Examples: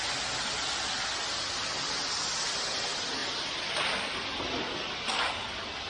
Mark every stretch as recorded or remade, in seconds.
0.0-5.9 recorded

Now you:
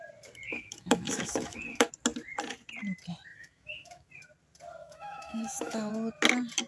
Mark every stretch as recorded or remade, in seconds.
0.0-0.5 recorded; 0.5-1.9 remade; 1.9-3.3 recorded; 3.3-4.1 remade; 4.1-4.8 recorded; 4.8-5.9 remade; 5.9-6.7 recorded

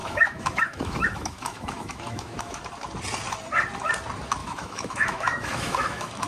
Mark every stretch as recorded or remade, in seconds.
0.0-2.6 remade; 2.6-4.4 recorded; 4.4-6.3 remade

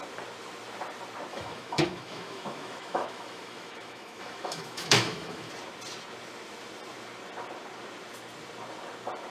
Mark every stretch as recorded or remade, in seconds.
0.0-1.3 recorded; 1.3-5.5 remade; 5.5-9.3 recorded

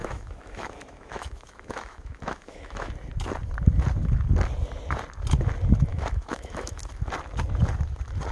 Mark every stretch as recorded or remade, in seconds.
0.0-2.9 remade; 2.9-5.9 recorded; 5.9-6.8 remade; 6.8-8.3 recorded

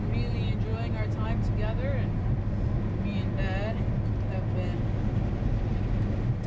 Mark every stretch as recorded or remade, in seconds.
0.0-6.5 recorded

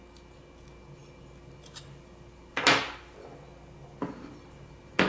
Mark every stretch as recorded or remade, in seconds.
0.0-5.1 recorded

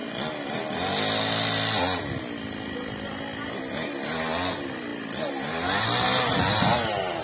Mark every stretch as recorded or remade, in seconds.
0.0-7.2 recorded